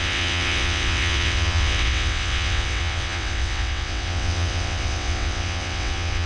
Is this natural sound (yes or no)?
no